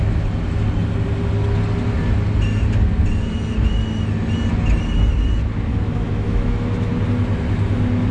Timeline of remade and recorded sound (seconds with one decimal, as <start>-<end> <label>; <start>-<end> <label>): 0.0-5.7 recorded; 5.7-6.9 remade; 6.9-8.1 recorded